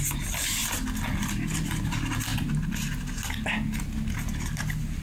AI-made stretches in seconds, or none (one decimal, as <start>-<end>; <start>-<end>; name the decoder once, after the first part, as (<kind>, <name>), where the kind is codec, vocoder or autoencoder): none